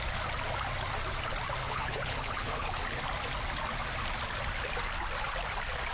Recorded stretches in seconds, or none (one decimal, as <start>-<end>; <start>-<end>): 0.0-1.6; 2.8-5.9